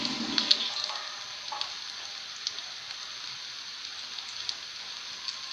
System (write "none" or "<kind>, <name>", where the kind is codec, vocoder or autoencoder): none